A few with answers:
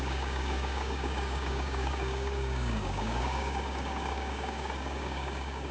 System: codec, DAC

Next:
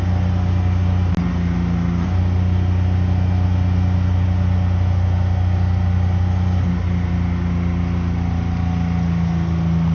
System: none